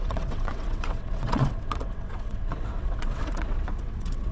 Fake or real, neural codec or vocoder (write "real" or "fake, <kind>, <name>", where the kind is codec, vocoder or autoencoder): fake, vocoder, WaveNeXt